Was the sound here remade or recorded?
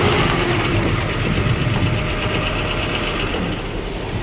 remade